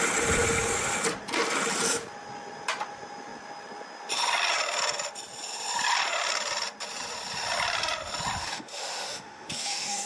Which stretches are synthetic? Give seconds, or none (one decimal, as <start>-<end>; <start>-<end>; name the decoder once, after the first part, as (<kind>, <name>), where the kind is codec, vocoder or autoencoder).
8.4-10.1 (autoencoder, DAC-VAE)